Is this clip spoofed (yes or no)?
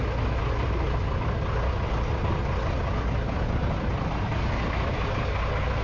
no